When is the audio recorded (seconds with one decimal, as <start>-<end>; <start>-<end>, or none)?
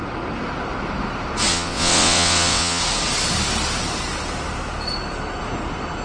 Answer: 0.0-1.5; 2.8-6.0